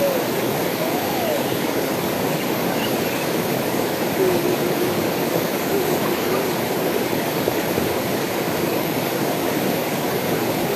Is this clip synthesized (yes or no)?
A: yes